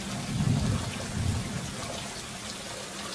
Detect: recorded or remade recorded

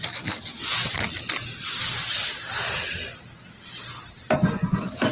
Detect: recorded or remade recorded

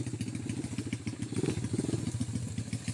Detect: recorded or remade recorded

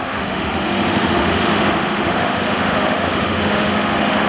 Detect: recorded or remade remade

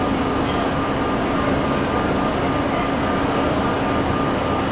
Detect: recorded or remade recorded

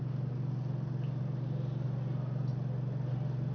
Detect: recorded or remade recorded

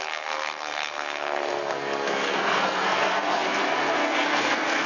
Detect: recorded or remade remade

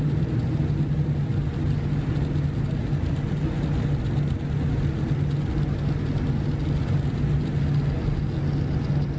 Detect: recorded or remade recorded